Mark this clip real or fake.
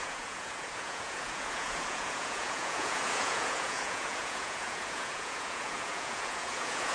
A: fake